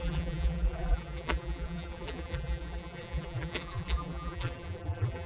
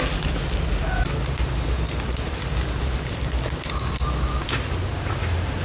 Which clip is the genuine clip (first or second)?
second